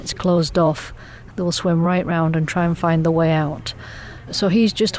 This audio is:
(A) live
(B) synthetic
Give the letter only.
B